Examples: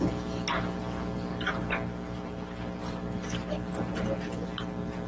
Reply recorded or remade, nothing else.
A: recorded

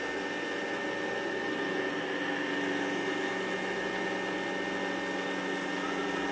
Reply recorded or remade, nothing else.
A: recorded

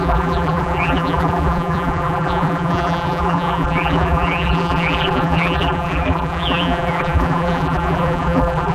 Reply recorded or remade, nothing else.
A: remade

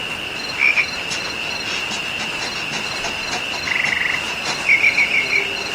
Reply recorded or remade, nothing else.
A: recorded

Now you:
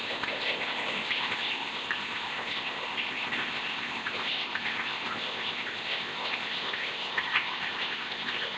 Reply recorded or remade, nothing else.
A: remade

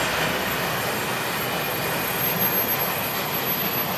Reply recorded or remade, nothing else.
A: recorded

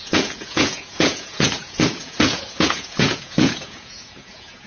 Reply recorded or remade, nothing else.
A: remade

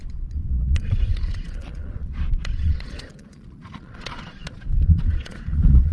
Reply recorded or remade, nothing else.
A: remade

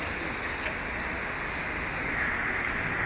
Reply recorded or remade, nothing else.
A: recorded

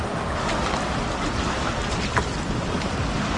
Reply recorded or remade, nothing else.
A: recorded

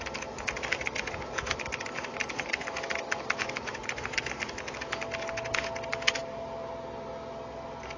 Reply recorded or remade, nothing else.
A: recorded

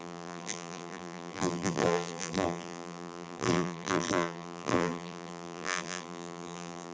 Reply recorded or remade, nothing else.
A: remade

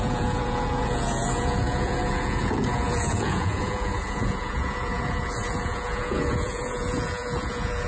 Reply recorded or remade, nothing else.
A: remade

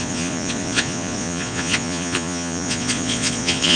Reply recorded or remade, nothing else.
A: remade